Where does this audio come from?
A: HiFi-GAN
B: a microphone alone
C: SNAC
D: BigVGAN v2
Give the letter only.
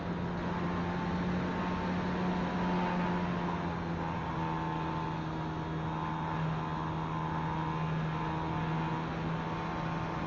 B